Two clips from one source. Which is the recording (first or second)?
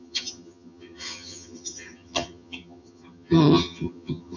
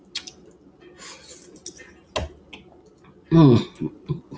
second